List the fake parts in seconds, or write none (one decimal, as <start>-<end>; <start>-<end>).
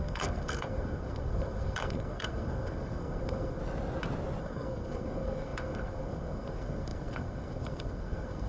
0.0-3.6; 4.4-8.5